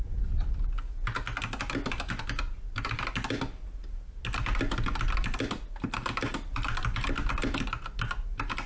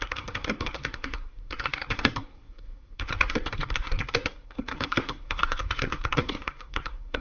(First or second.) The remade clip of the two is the second